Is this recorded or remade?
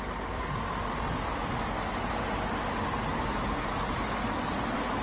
recorded